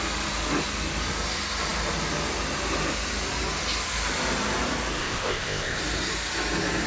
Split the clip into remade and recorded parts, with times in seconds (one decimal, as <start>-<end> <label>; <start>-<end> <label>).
0.0-5.0 recorded; 5.0-5.8 remade; 5.8-6.9 recorded